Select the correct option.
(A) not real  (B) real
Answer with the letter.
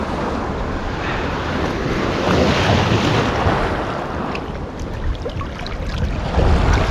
B